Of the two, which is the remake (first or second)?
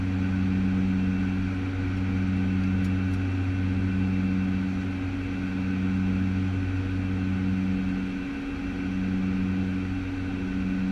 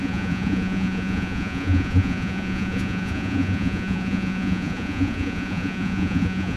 second